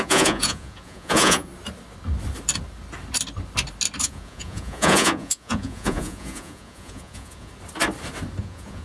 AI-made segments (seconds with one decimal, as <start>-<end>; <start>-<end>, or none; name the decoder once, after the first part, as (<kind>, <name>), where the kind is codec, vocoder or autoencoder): 0.0-1.5 (vocoder, Vocos); 4.0-7.5; 8.4-8.8